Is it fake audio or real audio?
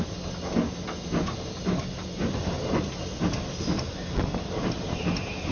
real